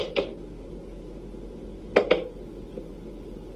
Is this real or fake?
real